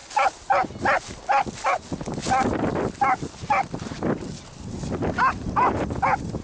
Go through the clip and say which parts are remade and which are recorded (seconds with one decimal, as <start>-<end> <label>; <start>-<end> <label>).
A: 0.0-6.4 recorded